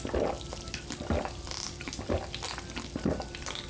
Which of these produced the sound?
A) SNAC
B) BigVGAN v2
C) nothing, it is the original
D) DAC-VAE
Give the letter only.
C